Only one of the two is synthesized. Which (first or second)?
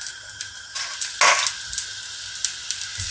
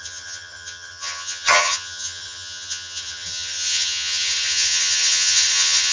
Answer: second